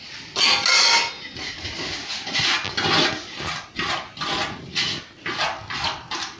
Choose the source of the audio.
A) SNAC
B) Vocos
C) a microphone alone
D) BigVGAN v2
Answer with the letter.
C